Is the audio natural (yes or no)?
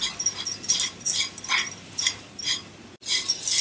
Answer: yes